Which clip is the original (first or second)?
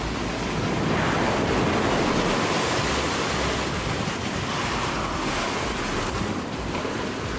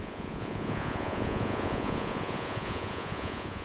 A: first